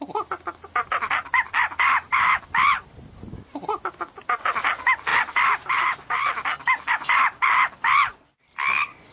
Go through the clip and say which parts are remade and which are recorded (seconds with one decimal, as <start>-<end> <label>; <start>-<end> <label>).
0.0-1.3 recorded; 1.3-2.6 remade; 2.6-9.1 recorded